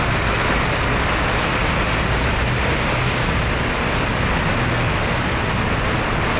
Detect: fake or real real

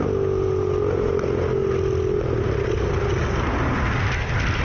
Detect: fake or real real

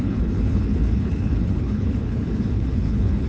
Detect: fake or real fake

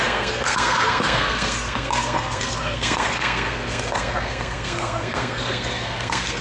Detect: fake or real fake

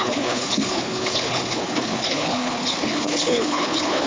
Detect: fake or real fake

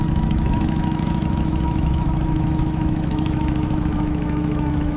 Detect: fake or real fake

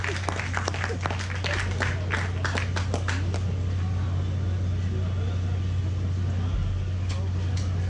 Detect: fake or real real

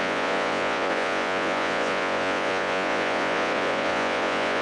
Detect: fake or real fake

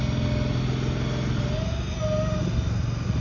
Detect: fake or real real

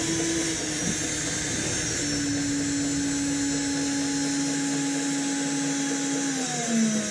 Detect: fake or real real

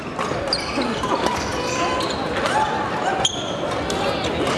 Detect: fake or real real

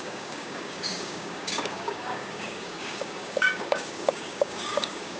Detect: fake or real fake